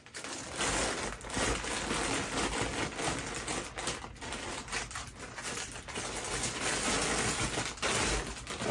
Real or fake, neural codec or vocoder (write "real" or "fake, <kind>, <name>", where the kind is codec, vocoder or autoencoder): real